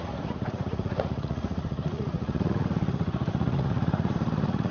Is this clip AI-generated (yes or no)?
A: yes